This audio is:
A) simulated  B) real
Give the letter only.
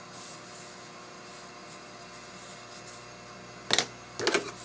B